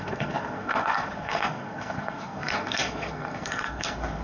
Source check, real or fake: fake